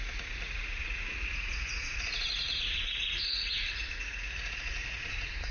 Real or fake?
fake